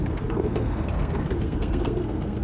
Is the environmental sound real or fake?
fake